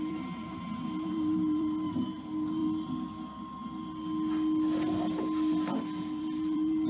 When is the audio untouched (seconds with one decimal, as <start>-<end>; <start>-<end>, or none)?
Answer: 2.6-6.2